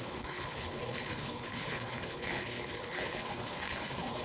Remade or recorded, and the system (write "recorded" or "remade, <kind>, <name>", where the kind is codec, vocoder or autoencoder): remade, codec, HILCodec